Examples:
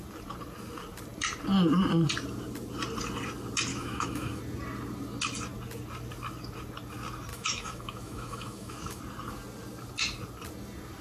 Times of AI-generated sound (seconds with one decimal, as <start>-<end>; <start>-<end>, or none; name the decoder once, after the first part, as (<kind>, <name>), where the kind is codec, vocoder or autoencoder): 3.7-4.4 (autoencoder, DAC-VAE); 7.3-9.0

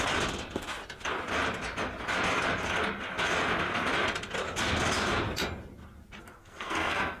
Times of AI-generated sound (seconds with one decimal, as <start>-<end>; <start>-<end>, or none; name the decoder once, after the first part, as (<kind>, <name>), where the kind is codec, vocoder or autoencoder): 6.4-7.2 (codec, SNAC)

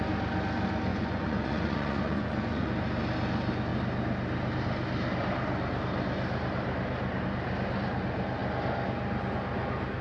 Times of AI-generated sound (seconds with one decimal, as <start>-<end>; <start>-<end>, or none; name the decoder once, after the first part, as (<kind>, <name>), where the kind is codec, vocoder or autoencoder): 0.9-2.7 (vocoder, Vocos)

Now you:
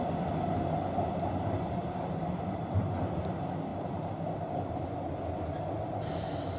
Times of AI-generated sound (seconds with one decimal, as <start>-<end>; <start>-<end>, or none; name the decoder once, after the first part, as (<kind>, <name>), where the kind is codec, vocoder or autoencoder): 1.8-2.9 (vocoder, BigVGAN v2); 3.7-4.8

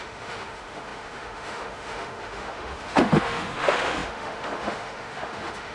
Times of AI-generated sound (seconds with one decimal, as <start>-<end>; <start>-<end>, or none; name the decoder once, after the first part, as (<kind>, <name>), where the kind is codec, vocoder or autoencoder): 0.0-5.7 (autoencoder, DAC-VAE)

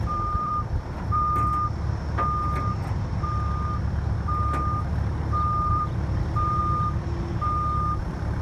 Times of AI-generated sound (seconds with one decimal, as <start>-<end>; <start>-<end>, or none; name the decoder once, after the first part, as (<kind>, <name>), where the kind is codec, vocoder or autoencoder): 0.0-1.5 (vocoder, BigVGAN v2); 5.7-6.6; 8.0-8.4

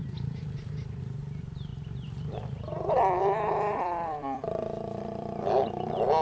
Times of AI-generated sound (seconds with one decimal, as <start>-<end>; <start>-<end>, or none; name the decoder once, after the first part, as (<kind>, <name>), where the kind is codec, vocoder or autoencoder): 0.0-6.2 (vocoder, BigVGAN v2)

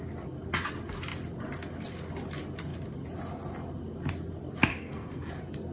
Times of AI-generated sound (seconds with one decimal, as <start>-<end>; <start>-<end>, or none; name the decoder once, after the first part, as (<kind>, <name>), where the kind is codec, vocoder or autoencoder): 4.7-5.3 (codec, SNAC)